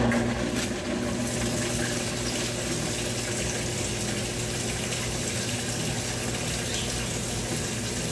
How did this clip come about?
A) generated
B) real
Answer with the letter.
B